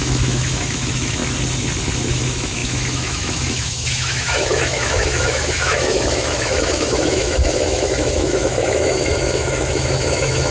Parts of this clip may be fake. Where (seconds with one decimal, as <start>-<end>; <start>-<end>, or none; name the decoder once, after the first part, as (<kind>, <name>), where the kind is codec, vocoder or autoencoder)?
0.0-1.2 (autoencoder, DAC-VAE); 2.1-10.5